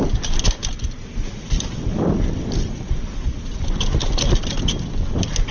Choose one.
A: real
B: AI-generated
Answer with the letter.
A